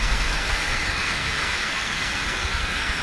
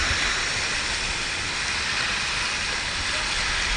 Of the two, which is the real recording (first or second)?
second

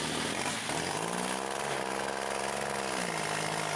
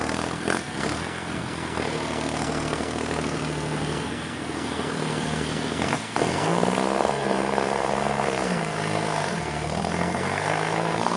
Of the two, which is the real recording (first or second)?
first